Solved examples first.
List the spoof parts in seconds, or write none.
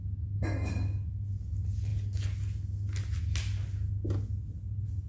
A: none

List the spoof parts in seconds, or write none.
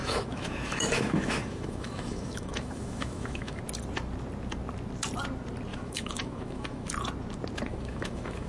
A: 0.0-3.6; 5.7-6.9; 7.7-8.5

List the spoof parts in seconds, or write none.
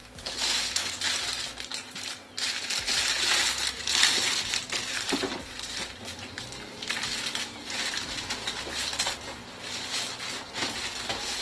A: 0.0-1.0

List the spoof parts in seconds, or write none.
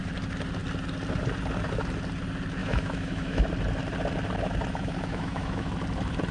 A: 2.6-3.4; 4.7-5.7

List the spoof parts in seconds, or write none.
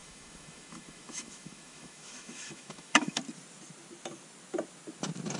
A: 0.0-3.2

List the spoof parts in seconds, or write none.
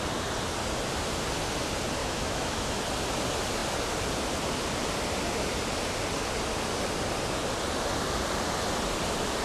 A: 2.0-2.8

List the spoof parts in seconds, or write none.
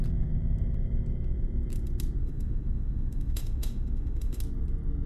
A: 2.2-4.4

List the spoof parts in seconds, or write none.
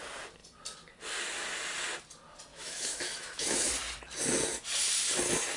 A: 2.5-3.7